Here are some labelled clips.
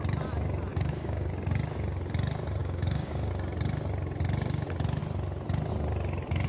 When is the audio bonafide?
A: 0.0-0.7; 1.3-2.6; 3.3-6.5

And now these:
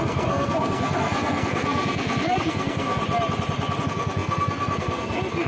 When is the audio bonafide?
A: 3.0-3.8

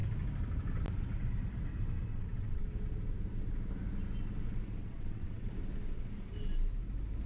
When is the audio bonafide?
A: 0.0-2.1; 2.7-4.8; 5.5-7.3

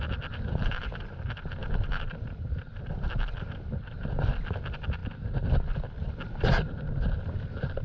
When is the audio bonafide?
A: 0.0-7.8

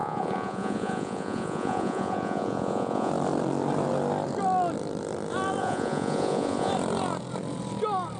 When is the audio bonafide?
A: 3.1-5.6; 6.7-8.2

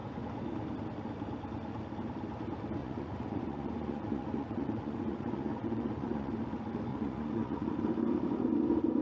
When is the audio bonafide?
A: 0.0-2.8; 6.3-6.9; 7.7-9.0

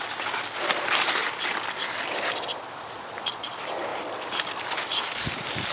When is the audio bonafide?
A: none